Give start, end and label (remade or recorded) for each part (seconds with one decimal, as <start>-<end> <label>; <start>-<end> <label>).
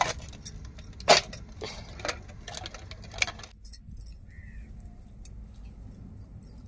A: 0.0-6.7 recorded